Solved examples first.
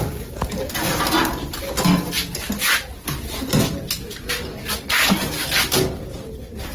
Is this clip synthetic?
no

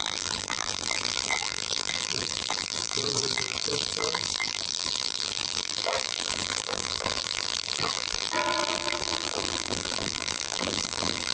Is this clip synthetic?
yes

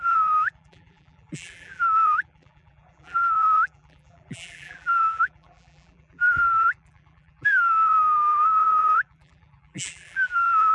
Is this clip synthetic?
yes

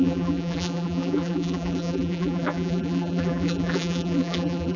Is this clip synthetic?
yes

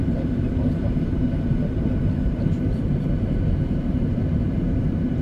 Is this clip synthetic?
yes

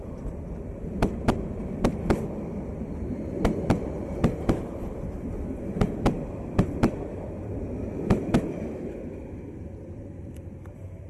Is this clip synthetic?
yes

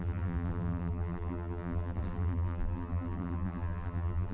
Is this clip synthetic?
yes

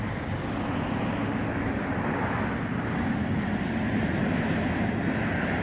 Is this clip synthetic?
no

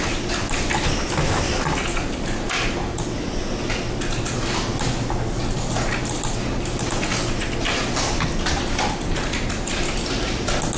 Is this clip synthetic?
no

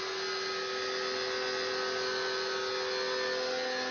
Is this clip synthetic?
no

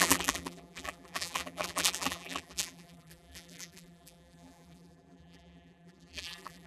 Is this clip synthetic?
yes